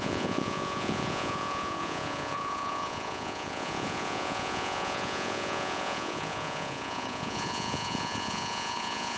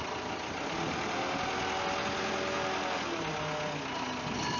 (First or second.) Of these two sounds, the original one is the second